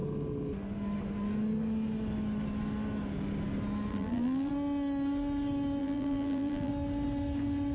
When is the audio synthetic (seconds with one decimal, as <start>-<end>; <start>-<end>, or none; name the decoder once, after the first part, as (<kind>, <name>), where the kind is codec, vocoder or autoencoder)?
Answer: 3.9-4.5 (vocoder, BigVGAN v2); 5.8-6.7